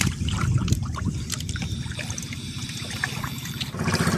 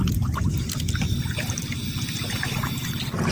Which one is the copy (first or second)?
first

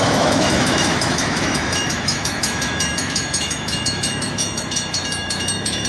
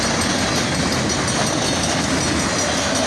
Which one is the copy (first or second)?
first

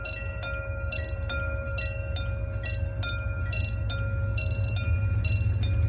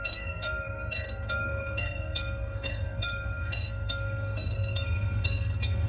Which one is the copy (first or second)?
second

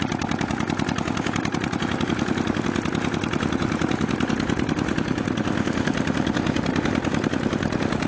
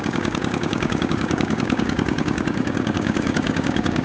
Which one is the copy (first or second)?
second